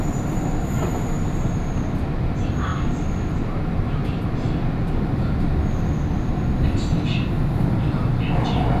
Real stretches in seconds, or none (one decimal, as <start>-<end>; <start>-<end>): 0.0-8.8